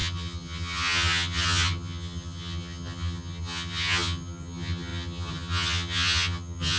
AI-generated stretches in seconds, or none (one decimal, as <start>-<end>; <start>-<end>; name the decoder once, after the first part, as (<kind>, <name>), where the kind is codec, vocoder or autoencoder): 0.0-6.8 (vocoder, HiFi-GAN)